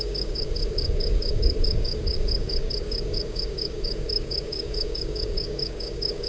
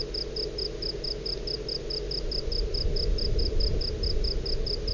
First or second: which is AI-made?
first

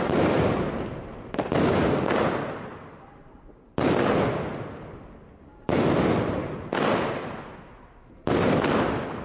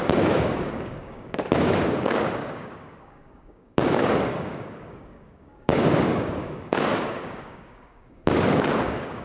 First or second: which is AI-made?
second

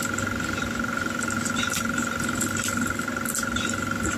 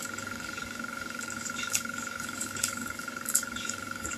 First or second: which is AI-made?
second